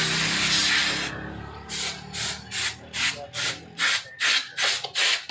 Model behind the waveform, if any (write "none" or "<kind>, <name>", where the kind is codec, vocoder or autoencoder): none